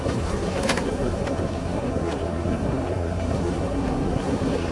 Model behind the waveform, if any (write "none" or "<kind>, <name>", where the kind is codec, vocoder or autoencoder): codec, SNAC